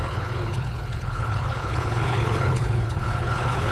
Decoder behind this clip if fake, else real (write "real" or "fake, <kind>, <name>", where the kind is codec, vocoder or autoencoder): fake, codec, HILCodec